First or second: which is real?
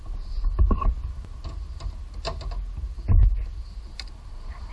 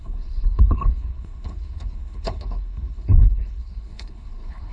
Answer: first